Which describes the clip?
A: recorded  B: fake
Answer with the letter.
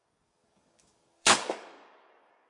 B